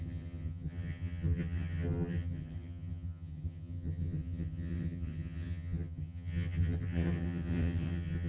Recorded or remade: remade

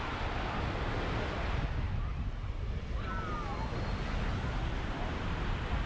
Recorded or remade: recorded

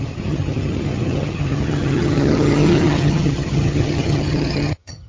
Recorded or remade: remade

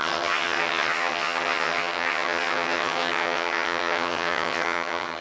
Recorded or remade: remade